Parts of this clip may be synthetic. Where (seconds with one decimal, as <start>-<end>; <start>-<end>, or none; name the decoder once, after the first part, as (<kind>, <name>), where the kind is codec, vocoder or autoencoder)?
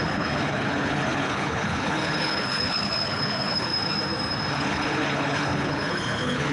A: 0.0-3.7 (codec, HILCodec); 4.5-6.5